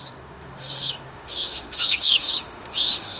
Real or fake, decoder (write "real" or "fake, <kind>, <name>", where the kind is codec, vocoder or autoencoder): fake, autoencoder, DAC-VAE